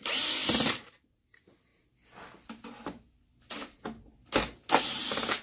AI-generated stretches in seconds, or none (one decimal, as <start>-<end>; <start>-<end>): 0.0-1.7; 4.8-5.4